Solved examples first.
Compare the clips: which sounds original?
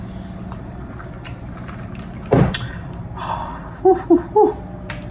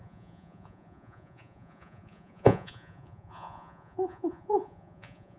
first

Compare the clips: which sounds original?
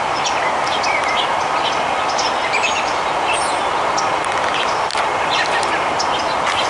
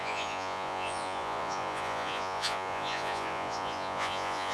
first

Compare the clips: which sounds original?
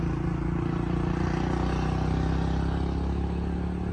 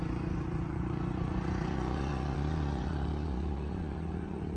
first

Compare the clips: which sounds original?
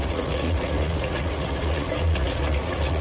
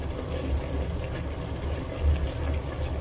second